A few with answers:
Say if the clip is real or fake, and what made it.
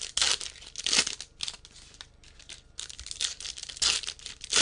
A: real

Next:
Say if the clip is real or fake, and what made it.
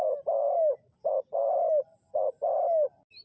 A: real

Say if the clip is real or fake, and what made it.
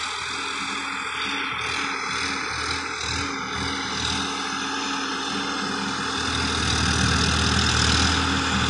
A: real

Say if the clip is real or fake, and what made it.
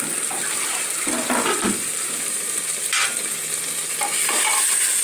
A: real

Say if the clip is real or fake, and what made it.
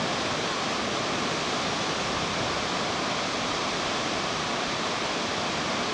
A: real